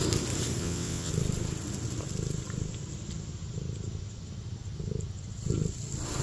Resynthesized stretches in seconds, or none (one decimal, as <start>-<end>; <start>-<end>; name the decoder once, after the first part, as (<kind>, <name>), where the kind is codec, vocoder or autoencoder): 0.6-1.1 (vocoder, WaveNeXt)